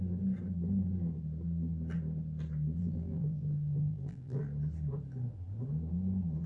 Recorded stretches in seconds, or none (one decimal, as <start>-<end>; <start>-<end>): 0.0-2.8; 4.4-6.5